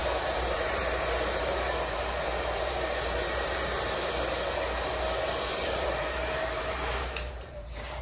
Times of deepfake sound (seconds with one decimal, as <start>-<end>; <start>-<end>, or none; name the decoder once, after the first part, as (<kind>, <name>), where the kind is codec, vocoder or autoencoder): 0.0-8.0 (vocoder, BigVGAN v2)